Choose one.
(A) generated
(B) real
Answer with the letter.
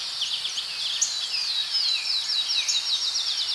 B